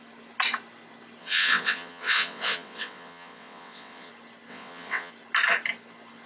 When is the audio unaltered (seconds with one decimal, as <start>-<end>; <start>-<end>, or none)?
0.0-1.2; 4.1-4.5; 5.1-6.3